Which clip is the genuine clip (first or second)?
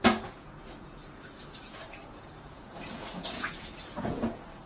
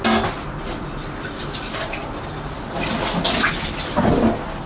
second